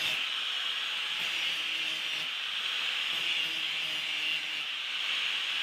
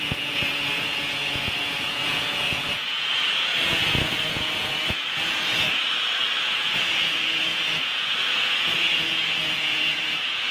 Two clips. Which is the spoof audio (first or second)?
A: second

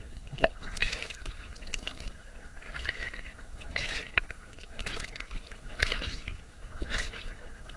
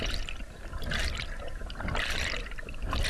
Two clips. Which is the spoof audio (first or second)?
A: first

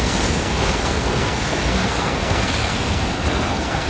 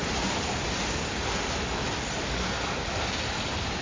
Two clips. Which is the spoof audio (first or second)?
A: first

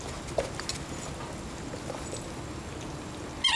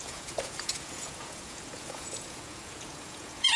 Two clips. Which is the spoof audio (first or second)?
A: second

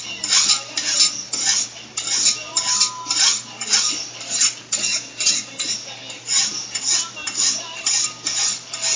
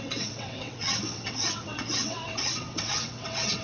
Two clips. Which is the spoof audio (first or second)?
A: second